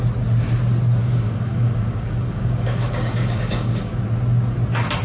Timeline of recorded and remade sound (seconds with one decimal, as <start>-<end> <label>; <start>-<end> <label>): 0.0-1.0 recorded; 1.0-4.0 remade; 4.0-5.0 recorded